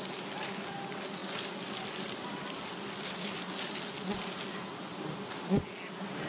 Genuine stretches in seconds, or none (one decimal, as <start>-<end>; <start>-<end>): 0.0-6.3